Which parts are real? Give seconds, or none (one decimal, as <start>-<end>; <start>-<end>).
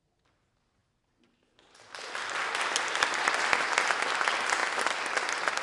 0.0-5.6